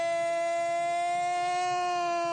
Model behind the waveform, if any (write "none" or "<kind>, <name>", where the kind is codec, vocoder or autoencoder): none